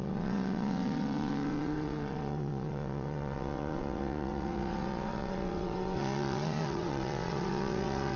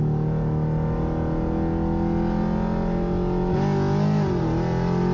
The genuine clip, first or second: second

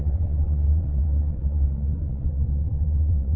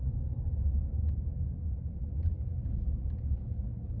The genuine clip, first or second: second